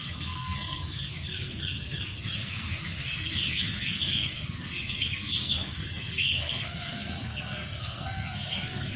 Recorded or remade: remade